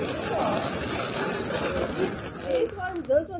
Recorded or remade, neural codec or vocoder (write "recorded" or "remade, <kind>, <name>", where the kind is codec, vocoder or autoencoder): recorded